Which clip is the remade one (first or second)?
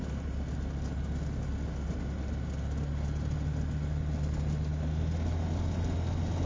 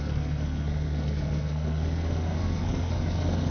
second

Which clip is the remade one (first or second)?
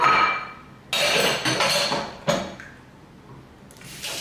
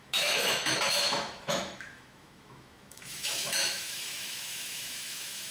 second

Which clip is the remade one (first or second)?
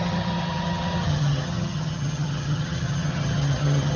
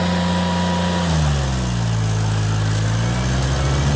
first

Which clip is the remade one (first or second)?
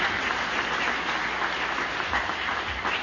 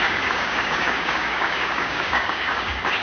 second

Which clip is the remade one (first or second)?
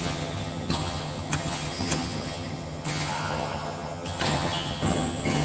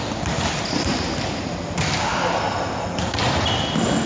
first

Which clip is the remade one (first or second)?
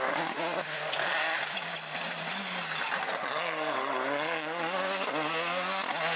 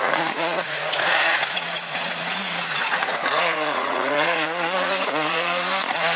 second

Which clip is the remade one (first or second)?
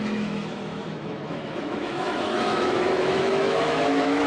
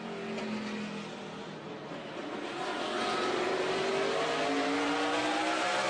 first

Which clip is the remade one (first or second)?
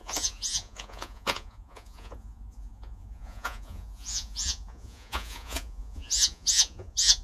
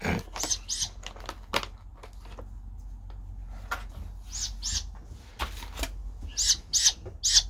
first